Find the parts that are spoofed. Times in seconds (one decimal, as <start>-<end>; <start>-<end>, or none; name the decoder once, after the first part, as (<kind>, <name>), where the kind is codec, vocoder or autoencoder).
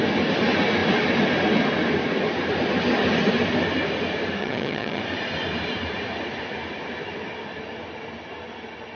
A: 4.4-5.0 (vocoder, HiFi-GAN)